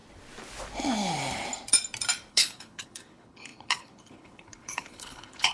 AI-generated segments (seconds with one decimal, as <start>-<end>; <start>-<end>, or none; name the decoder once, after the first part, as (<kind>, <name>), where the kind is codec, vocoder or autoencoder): 2.3-5.5 (codec, HILCodec)

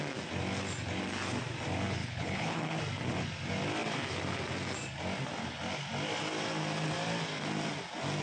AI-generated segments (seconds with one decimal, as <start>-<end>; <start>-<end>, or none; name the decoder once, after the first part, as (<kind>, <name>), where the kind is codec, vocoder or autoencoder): 2.0-2.8 (codec, HILCodec)

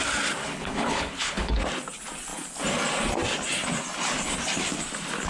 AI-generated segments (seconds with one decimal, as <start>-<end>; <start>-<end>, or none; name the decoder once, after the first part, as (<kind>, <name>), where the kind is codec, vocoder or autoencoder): 0.4-1.6 (codec, HILCodec)

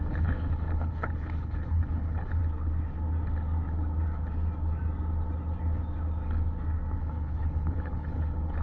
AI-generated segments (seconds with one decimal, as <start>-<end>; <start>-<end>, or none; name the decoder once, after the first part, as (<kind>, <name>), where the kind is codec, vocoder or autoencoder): 0.0-2.4 (codec, HILCodec); 7.0-8.6